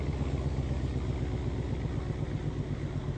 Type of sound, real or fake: real